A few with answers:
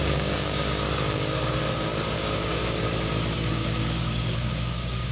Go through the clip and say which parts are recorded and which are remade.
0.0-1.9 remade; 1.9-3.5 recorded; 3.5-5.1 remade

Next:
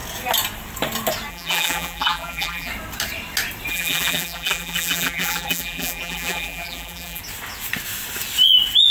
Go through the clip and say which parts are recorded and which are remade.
0.0-1.3 recorded; 1.3-2.7 remade; 2.7-3.7 recorded; 3.7-7.2 remade; 7.2-8.9 recorded

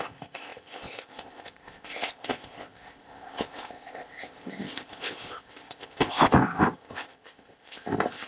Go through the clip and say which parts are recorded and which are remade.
0.0-8.3 remade

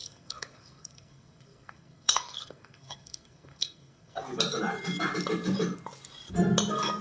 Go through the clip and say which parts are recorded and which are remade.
0.0-4.2 remade; 4.2-7.0 recorded

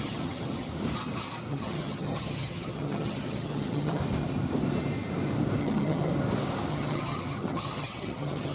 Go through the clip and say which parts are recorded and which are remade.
0.0-0.7 remade; 0.7-1.5 recorded; 1.5-4.0 remade; 4.0-5.6 recorded; 5.6-6.1 remade; 6.1-6.7 recorded; 6.7-8.5 remade